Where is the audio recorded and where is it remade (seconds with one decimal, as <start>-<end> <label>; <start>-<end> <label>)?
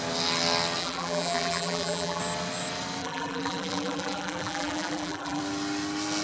0.0-0.8 recorded; 0.8-2.2 remade; 2.2-3.0 recorded; 3.0-5.4 remade; 5.4-6.2 recorded